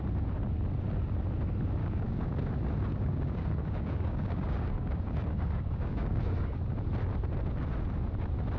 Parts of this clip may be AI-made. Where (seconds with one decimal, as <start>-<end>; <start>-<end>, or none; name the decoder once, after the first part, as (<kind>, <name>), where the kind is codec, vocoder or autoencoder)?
1.8-2.5 (codec, DAC); 2.9-6.6